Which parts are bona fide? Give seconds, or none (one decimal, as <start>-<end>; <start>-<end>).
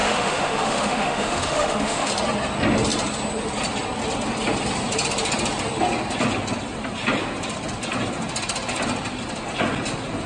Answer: 2.1-10.3